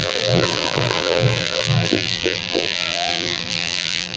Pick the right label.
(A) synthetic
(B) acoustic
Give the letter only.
A